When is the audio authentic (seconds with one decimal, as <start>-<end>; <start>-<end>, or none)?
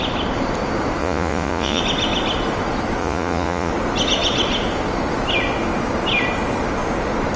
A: 0.0-1.0; 1.8-3.0; 3.7-7.4